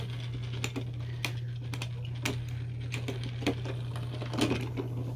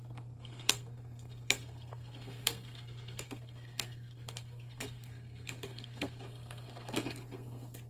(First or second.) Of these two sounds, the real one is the first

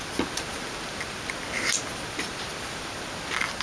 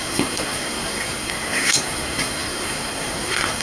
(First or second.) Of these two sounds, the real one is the first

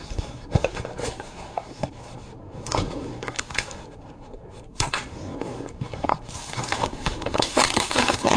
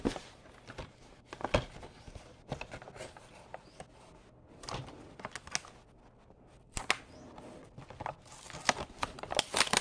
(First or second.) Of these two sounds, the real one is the second